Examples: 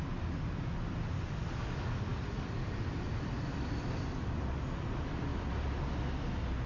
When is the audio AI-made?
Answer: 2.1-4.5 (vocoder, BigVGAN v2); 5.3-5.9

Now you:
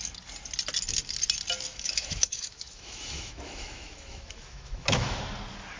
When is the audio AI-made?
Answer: 1.7-5.2 (autoencoder, DAC-VAE)